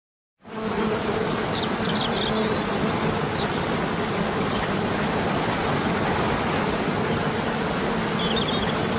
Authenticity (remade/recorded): recorded